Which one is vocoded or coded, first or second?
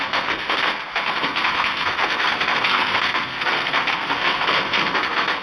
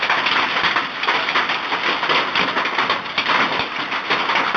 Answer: first